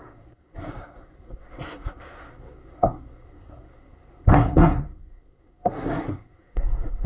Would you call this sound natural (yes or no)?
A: no